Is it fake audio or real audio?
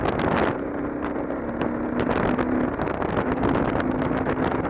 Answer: real